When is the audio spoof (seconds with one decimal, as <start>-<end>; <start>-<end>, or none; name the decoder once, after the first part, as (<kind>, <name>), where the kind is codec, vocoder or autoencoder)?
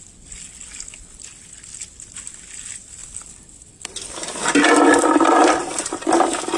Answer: 5.6-6.1 (vocoder, BigVGAN v2)